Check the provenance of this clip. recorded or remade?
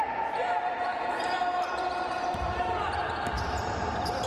remade